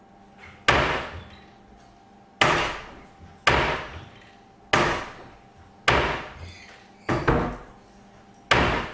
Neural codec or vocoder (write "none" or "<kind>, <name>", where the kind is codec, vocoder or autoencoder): none